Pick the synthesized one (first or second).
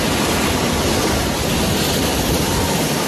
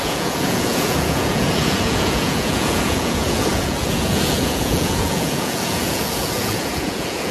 second